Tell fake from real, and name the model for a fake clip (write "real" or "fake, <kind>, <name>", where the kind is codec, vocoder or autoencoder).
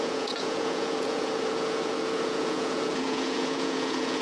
fake, vocoder, Vocos